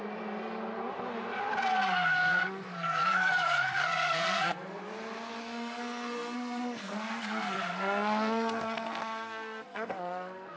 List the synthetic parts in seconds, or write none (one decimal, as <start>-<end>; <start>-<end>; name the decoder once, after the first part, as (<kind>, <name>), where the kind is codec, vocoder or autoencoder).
1.7-4.8 (codec, SNAC); 5.4-10.6